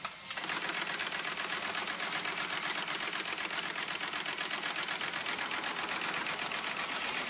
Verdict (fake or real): real